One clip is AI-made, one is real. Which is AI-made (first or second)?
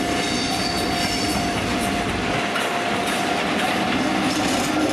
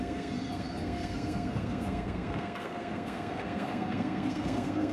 second